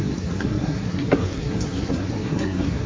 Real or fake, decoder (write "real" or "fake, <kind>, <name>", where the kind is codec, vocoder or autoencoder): fake, codec, SNAC